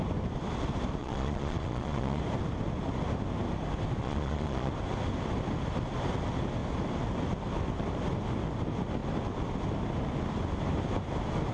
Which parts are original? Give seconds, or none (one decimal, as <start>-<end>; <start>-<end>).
0.0-1.0; 2.2-4.0; 4.7-11.5